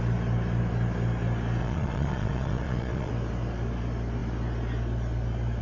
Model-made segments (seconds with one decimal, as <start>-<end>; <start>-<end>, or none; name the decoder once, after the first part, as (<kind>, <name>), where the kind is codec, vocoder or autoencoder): 1.6-3.1 (vocoder, Vocos)